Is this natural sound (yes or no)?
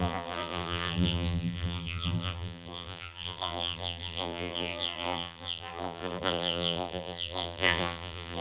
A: no